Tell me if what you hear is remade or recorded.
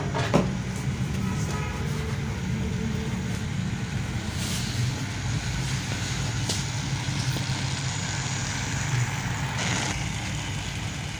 recorded